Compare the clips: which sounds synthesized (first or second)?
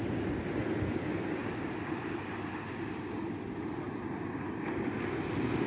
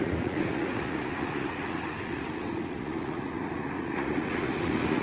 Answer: second